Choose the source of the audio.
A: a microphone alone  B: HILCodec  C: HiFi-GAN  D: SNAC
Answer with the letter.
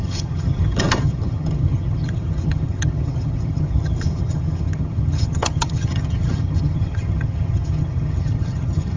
C